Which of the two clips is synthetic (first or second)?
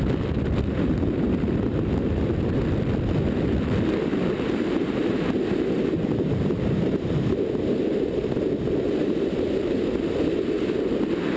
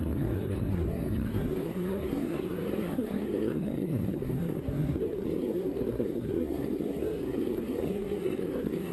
second